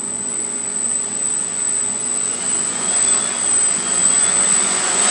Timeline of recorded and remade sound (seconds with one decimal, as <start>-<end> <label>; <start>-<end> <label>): 0.0-3.2 remade; 3.2-3.7 recorded; 3.7-5.1 remade